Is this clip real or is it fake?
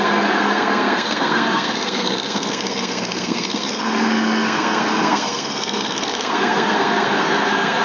fake